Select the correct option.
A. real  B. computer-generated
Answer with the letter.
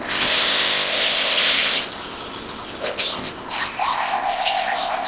B